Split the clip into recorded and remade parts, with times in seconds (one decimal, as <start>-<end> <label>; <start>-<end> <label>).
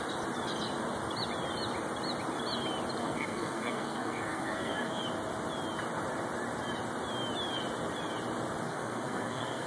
0.0-3.0 recorded; 3.0-5.0 remade; 5.0-8.7 recorded; 8.7-9.7 remade